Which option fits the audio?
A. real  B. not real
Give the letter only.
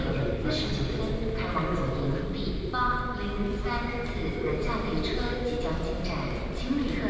A